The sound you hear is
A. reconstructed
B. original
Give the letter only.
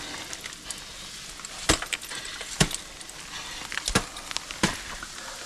B